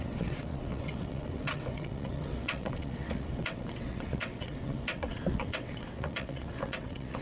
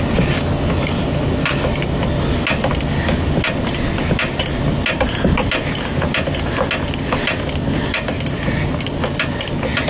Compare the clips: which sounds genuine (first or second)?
second